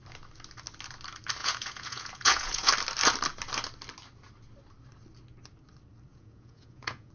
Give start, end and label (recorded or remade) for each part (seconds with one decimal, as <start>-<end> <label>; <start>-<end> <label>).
0.0-1.4 recorded; 1.4-2.7 remade; 2.7-6.1 recorded; 6.1-7.1 remade